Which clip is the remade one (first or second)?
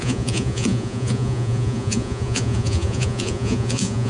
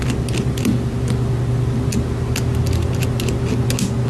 first